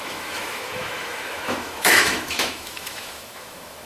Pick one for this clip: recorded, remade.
remade